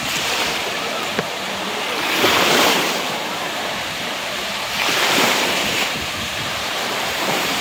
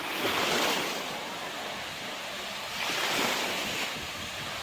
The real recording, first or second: second